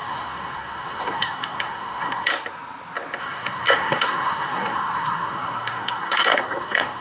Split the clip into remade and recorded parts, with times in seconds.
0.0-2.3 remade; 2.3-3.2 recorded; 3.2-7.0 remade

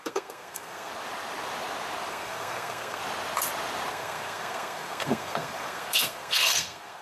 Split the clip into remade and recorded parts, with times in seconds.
0.0-0.9 remade; 0.9-2.1 recorded; 2.1-3.0 remade; 3.0-3.9 recorded; 3.9-7.0 remade